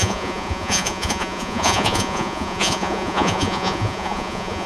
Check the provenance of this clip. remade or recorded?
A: remade